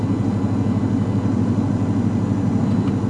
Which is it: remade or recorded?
recorded